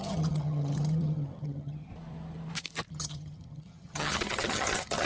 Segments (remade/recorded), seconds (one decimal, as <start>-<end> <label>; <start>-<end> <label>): 0.0-1.9 remade; 1.9-2.9 recorded; 2.9-5.1 remade